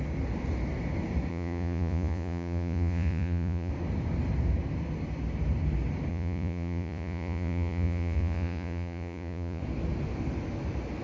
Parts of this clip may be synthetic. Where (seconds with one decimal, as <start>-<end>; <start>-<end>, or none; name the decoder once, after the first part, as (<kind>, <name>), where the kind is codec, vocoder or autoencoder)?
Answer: 1.3-3.7 (vocoder, Vocos); 6.1-9.6